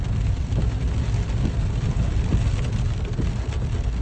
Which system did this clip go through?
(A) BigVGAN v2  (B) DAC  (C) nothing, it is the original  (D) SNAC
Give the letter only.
C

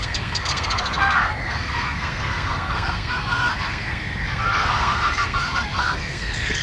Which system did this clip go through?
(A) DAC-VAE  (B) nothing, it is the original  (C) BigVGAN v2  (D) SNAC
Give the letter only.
D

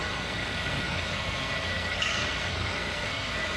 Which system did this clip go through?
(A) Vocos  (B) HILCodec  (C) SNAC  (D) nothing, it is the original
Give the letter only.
C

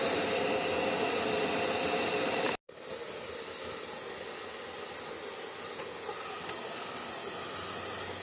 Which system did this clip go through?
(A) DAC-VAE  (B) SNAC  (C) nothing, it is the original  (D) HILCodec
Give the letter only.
C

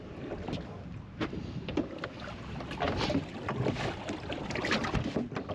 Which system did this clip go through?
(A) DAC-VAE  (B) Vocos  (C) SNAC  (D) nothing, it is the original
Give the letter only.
D